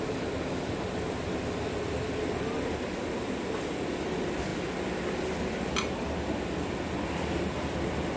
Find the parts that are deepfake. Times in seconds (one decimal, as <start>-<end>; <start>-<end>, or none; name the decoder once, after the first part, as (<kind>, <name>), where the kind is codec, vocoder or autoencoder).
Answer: none